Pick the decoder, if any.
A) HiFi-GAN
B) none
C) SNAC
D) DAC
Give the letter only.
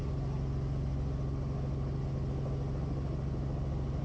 B